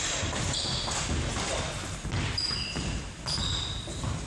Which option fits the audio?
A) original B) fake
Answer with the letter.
A